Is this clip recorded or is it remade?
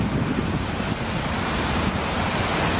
remade